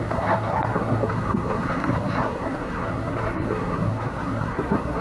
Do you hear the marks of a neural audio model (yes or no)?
yes